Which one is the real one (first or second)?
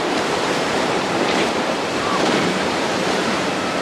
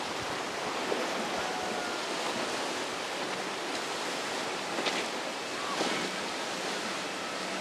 second